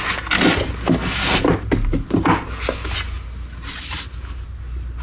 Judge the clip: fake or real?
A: real